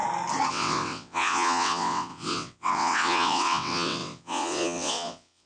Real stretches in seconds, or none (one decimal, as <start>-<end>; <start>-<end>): 0.0-0.5